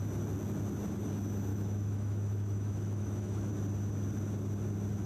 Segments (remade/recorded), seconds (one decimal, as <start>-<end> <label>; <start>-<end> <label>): 0.0-1.5 recorded; 1.5-3.5 remade; 3.5-5.1 recorded